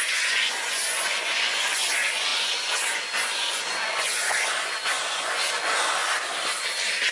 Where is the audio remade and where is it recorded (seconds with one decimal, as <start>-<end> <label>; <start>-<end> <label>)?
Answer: 0.0-6.0 remade; 6.0-7.1 recorded